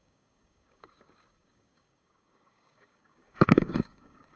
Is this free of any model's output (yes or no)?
no